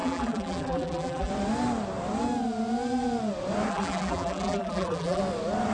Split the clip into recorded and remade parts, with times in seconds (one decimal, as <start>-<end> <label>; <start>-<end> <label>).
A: 0.0-1.3 remade; 1.3-3.7 recorded; 3.7-5.2 remade; 5.2-5.7 recorded